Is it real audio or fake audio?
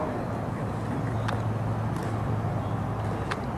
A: real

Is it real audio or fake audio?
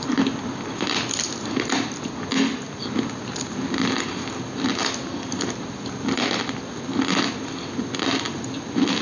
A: real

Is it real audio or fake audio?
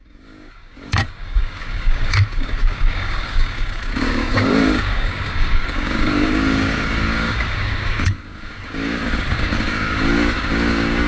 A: fake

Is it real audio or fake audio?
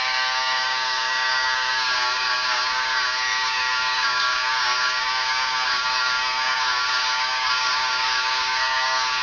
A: fake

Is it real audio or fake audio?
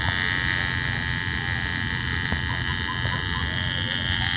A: real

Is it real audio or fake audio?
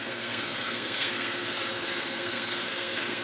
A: fake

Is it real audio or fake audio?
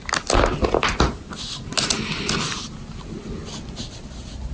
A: real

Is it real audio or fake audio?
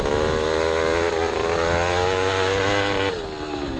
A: real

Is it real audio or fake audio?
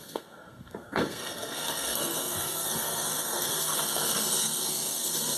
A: fake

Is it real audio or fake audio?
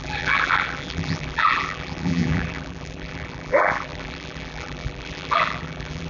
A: fake